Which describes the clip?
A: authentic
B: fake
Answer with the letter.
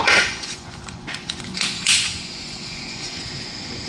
B